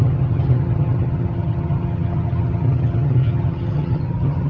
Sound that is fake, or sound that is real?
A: fake